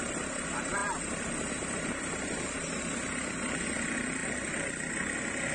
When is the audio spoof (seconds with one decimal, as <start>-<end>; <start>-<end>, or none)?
none